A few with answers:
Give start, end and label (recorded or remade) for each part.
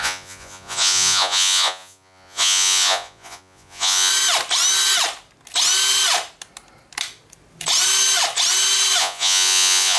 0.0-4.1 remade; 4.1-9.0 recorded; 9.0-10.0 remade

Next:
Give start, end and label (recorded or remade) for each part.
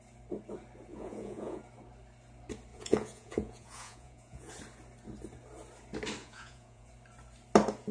0.0-0.9 recorded; 0.9-1.6 remade; 1.6-2.7 recorded; 2.7-4.5 remade; 4.5-6.2 recorded; 6.2-6.9 remade; 6.9-7.9 recorded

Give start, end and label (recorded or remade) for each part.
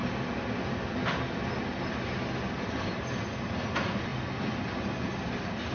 0.0-5.7 recorded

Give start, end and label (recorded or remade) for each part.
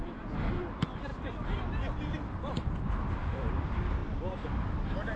0.0-5.2 recorded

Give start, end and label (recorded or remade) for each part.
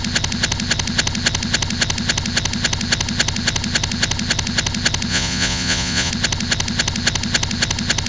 0.0-5.1 recorded; 5.1-6.1 remade; 6.1-8.1 recorded